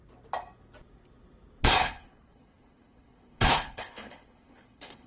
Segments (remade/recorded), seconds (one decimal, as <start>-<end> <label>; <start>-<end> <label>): 0.0-1.8 recorded; 1.8-5.1 remade